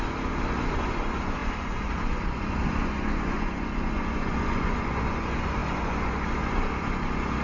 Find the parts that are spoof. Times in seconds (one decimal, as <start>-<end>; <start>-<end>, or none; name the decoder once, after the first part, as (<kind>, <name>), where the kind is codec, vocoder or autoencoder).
0.0-7.4 (vocoder, Vocos)